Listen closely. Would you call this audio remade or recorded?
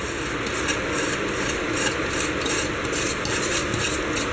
recorded